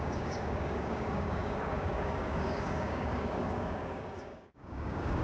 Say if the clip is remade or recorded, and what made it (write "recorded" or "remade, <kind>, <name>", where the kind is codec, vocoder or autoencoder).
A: remade, codec, DAC